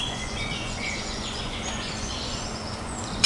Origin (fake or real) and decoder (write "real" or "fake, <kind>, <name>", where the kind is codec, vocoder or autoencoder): fake, vocoder, Vocos